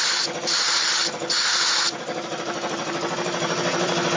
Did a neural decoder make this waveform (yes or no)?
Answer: yes